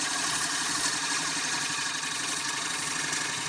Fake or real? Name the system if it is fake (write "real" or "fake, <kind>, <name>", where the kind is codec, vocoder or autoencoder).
fake, vocoder, Vocos